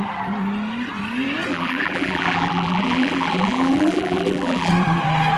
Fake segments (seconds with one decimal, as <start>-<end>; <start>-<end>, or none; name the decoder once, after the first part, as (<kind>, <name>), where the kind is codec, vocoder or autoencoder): 1.5-4.7 (vocoder, BigVGAN v2)